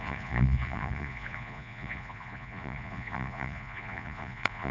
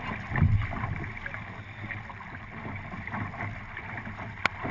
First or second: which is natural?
second